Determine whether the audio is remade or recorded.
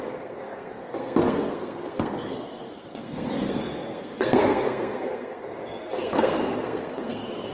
remade